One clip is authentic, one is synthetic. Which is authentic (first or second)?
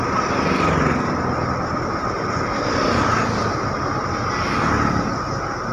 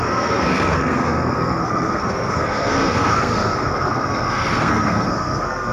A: first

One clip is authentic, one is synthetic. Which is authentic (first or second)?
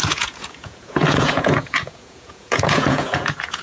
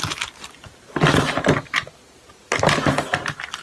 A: second